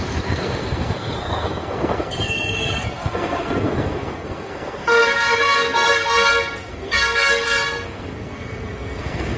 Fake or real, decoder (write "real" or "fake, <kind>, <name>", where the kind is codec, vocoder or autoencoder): fake, codec, SNAC